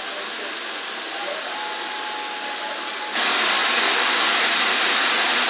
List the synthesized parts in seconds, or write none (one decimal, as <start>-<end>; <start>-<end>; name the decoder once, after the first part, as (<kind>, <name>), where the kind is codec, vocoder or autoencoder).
none